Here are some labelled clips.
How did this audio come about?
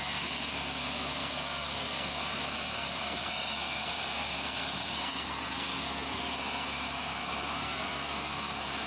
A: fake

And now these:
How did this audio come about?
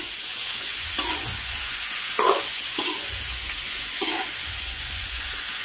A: fake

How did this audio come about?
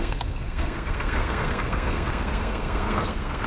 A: fake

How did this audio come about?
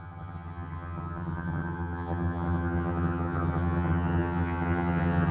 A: fake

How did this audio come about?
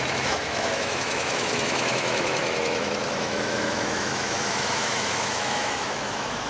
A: fake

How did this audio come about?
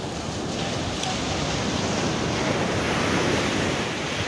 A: real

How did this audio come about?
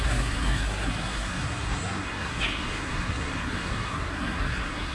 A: fake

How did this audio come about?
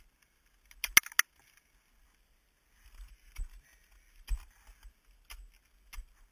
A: real